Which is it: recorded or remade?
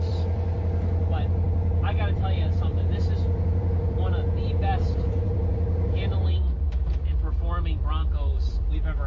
remade